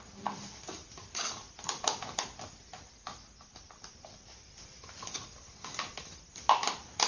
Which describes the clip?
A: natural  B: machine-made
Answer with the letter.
A